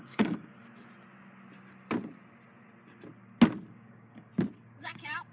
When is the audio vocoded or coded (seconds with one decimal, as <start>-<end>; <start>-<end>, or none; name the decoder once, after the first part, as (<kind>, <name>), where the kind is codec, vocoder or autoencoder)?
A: 0.0-0.5 (codec, DAC); 3.7-4.3; 4.8-5.3